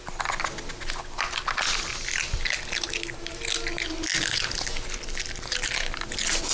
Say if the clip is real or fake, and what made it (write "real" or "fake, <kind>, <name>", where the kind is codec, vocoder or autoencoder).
real